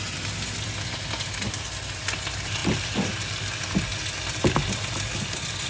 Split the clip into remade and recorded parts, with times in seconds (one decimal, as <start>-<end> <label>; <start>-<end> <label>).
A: 0.0-5.7 recorded